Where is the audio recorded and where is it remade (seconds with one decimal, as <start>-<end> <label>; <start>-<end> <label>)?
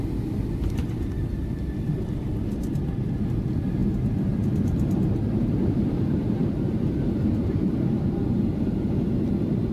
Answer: 0.0-3.8 recorded; 3.8-7.7 remade; 7.7-9.7 recorded